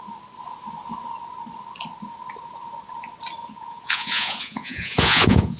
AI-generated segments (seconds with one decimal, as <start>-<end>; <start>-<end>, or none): 3.4-5.6